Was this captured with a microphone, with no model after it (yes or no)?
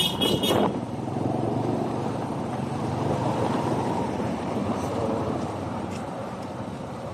no